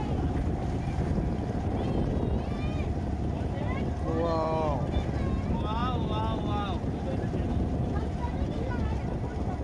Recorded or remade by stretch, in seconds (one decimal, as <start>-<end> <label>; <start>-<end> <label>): 0.0-9.6 recorded